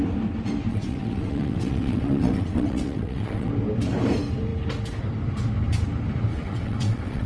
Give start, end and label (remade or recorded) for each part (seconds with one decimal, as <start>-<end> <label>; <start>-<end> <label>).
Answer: 0.0-0.7 recorded; 0.7-3.5 remade; 3.5-6.3 recorded; 6.3-7.3 remade